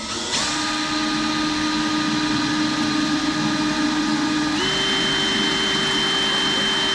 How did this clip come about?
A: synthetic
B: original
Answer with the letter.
B